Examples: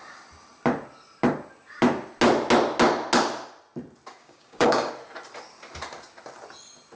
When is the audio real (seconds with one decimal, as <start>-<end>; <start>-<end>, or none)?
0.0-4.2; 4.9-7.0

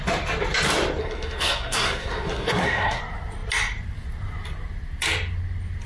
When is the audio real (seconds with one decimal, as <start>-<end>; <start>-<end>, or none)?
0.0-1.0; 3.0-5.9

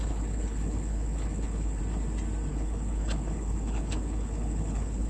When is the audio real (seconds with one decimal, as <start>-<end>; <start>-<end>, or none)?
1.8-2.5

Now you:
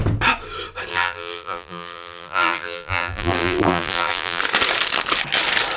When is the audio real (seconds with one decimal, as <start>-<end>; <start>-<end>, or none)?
0.0-0.9; 4.4-5.8

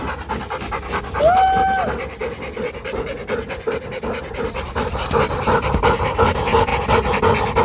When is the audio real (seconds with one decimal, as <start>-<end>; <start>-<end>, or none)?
0.0-7.6

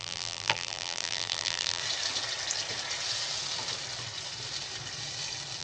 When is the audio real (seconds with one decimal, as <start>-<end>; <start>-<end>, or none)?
1.8-5.6

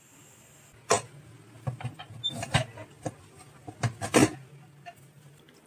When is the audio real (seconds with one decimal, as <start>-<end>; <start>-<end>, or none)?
0.0-5.7